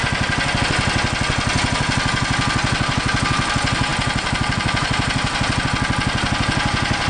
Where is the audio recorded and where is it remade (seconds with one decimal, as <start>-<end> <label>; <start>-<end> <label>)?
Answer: 0.0-0.6 remade; 0.6-3.9 recorded; 3.9-5.6 remade; 5.6-7.1 recorded

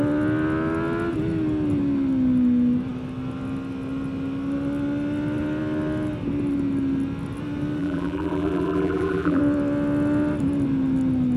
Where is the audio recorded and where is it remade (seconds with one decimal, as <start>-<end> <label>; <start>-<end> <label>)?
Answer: 0.0-7.8 recorded; 7.8-9.4 remade; 9.4-11.4 recorded

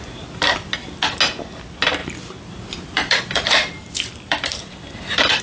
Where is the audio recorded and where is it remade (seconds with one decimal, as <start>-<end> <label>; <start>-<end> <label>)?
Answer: 0.0-2.0 recorded; 2.0-5.4 remade

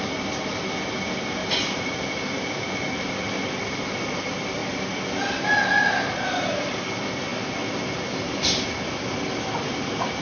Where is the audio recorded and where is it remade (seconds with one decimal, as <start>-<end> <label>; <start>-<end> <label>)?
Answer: 0.0-1.4 recorded; 1.4-2.8 remade; 2.8-10.2 recorded

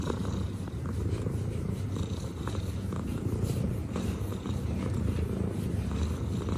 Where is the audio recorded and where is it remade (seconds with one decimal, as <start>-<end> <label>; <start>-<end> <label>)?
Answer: 0.0-1.0 recorded; 1.0-5.0 remade; 5.0-6.6 recorded